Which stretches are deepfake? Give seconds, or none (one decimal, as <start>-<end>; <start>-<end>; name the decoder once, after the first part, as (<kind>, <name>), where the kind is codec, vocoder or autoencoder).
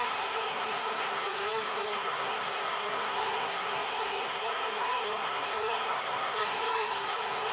0.0-7.5 (codec, SNAC)